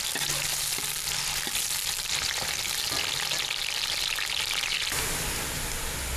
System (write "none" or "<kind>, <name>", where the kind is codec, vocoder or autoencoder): none